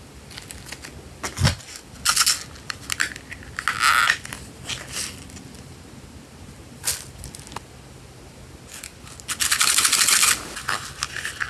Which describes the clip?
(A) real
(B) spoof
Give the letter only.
A